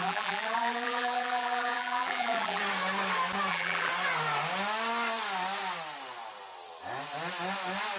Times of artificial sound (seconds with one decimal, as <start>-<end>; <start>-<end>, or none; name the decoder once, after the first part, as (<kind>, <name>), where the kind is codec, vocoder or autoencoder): 0.0-2.6 (vocoder, BigVGAN v2); 3.5-3.9